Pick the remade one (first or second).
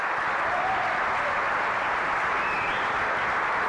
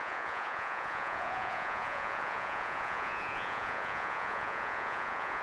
second